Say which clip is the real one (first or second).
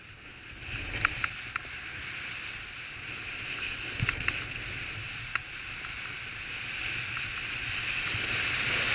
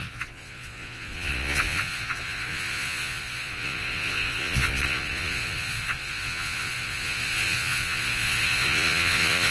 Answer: first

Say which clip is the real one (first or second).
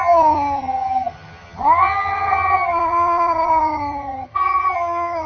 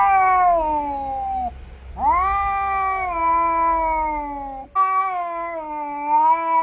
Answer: second